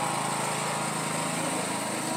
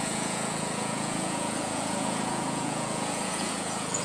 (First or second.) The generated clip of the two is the second